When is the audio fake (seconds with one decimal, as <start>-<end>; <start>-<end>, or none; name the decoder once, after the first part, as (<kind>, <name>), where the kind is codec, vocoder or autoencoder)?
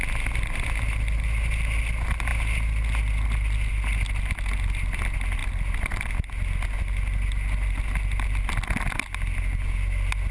none